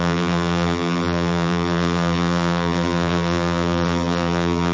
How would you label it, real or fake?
fake